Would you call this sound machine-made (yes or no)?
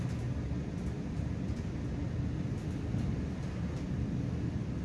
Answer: no